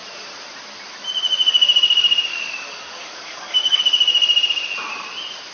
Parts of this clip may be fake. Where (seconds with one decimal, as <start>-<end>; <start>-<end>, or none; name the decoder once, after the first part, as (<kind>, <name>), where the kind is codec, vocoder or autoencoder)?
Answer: 2.3-3.8 (codec, DAC)